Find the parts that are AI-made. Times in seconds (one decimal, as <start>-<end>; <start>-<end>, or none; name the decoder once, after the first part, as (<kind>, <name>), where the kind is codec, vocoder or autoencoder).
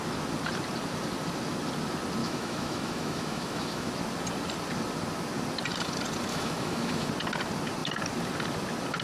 2.2-3.9 (autoencoder, DAC-VAE); 6.3-7.1